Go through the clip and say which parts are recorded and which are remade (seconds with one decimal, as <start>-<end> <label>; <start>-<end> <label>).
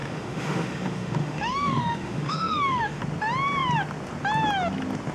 0.0-3.0 remade; 3.0-5.1 recorded